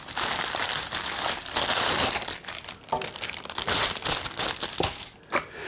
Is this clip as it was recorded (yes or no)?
yes